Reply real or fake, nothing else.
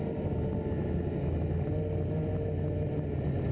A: real